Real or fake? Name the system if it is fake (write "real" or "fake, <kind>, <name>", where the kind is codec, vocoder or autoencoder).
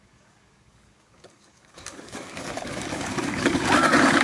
fake, codec, DAC